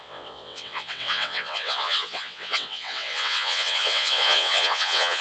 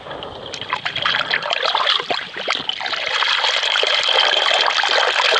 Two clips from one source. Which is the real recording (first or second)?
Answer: second